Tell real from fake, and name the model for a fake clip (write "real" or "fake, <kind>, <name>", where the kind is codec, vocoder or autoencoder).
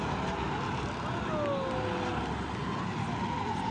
real